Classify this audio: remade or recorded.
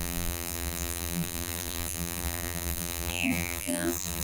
remade